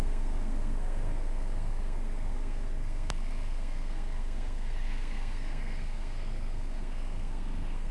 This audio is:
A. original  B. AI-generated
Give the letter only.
B